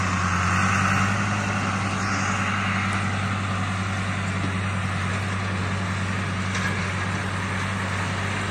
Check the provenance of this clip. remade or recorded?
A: recorded